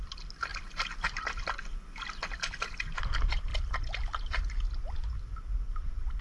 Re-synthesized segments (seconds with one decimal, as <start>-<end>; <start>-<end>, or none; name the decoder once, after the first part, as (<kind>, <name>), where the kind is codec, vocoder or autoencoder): none